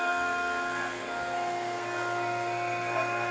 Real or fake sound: fake